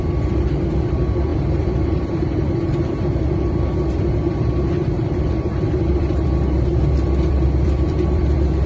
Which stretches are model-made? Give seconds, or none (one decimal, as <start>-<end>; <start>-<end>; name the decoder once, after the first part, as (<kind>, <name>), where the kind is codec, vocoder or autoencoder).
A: 0.0-8.7 (vocoder, BigVGAN v2)